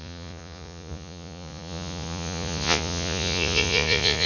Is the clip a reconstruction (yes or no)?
yes